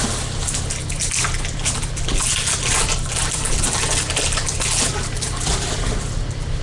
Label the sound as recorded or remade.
recorded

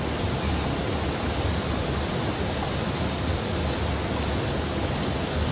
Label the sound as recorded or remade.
recorded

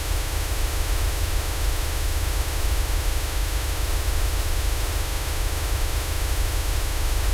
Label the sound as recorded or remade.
remade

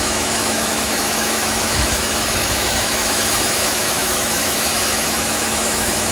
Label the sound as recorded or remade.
remade